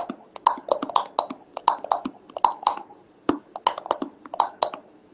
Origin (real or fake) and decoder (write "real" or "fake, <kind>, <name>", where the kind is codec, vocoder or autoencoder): real